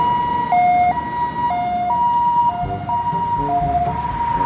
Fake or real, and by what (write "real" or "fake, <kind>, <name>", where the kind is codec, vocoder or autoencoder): real